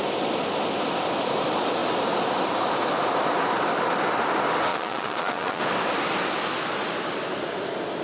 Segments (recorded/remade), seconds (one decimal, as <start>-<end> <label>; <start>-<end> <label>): 0.0-4.7 recorded; 4.7-5.6 remade; 5.6-8.0 recorded

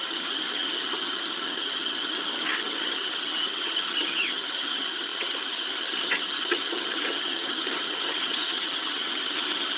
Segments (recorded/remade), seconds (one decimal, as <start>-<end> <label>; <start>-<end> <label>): 0.0-9.8 remade

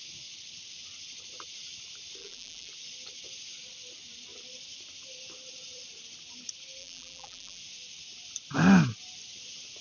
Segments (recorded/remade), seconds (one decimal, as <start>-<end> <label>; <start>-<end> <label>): 0.0-2.2 recorded; 2.2-2.7 remade; 2.7-6.8 recorded; 6.8-7.6 remade; 7.6-9.8 recorded

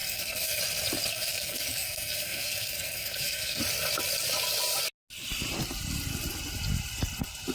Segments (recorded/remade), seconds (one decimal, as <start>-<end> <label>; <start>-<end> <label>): 0.0-0.6 remade; 0.6-1.1 recorded; 1.1-3.6 remade; 3.6-7.5 recorded

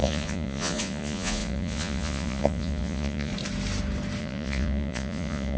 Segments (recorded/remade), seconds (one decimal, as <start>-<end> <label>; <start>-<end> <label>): 0.0-3.3 remade; 3.3-4.2 recorded; 4.2-5.6 remade

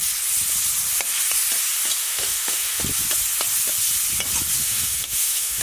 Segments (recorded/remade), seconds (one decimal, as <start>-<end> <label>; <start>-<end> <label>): 0.0-2.0 recorded; 2.0-2.8 remade; 2.8-4.6 recorded; 4.6-5.6 remade

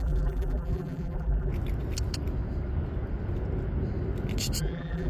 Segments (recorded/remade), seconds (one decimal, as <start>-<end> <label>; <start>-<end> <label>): 0.0-1.5 remade; 1.5-4.6 recorded; 4.6-5.1 remade

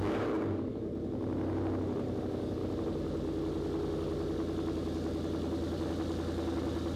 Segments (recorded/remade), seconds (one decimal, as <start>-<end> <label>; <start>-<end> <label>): 0.0-0.9 remade; 0.9-2.2 recorded; 2.2-2.6 remade; 2.6-7.0 recorded